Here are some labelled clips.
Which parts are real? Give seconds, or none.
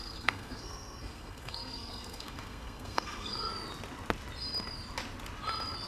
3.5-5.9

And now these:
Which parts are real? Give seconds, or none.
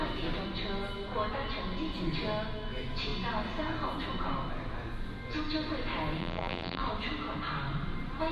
0.0-6.2; 6.8-8.3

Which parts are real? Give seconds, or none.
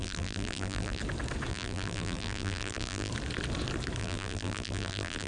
1.0-1.5; 3.1-4.0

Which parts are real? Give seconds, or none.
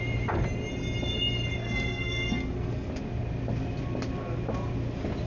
0.0-1.6; 2.9-5.3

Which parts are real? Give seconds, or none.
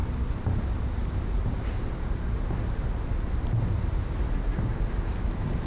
0.0-5.7